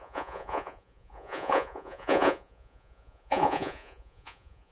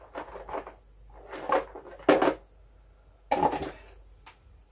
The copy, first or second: first